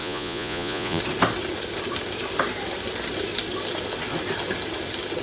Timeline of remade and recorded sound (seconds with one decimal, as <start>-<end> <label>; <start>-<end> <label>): 0.0-1.0 remade; 1.0-5.2 recorded